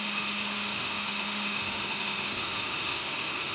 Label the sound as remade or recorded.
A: remade